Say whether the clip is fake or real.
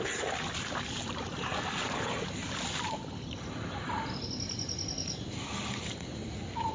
real